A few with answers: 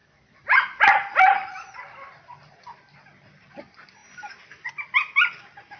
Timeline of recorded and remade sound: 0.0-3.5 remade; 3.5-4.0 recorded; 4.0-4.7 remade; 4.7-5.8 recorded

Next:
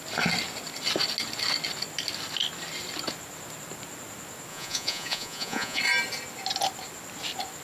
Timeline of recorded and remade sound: 0.0-4.5 recorded; 4.5-5.8 remade; 5.8-7.6 recorded

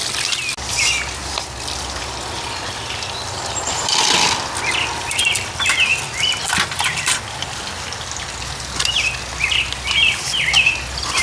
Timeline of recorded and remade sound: 0.0-11.2 recorded

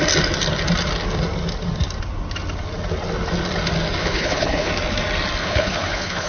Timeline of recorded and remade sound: 0.0-4.0 recorded; 4.0-4.7 remade; 4.7-5.4 recorded; 5.4-6.3 remade

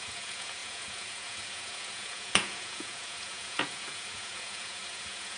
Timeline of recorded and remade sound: 0.0-5.4 remade

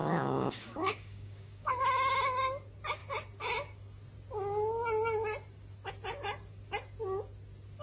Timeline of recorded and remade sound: 0.0-1.7 remade; 1.7-7.8 recorded

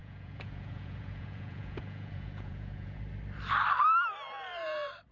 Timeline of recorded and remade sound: 0.0-3.0 remade; 3.0-5.1 recorded

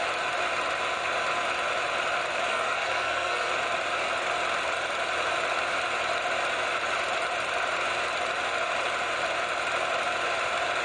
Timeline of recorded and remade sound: 0.0-2.5 recorded; 2.5-3.5 remade; 3.5-10.8 recorded